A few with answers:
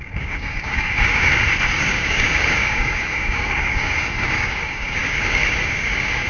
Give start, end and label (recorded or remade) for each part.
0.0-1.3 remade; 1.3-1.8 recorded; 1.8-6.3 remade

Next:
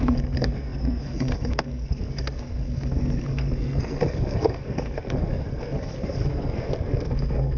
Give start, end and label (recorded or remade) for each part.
0.0-7.6 remade

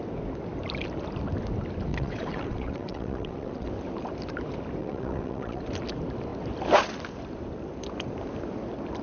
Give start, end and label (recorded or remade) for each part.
0.0-1.9 recorded; 1.9-3.7 remade; 3.7-4.8 recorded; 4.8-5.6 remade; 5.6-9.0 recorded

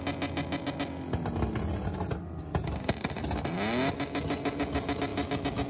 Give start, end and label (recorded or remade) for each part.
0.0-5.7 recorded

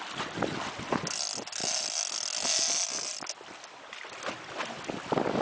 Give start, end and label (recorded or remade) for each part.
0.0-5.4 recorded